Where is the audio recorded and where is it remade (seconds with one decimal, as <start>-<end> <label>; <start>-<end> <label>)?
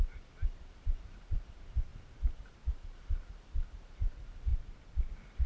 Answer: 0.0-4.5 remade; 4.5-5.1 recorded; 5.1-5.5 remade